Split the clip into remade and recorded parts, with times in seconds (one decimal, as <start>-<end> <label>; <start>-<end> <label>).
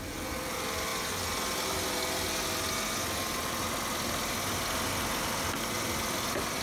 0.0-6.6 recorded